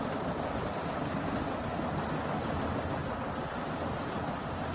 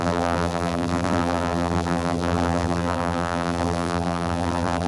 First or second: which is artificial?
second